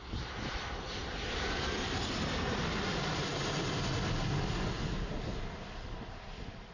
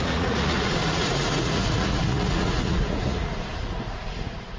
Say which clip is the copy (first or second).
second